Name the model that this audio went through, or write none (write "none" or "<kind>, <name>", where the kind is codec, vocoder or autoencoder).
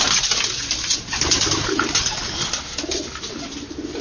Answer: none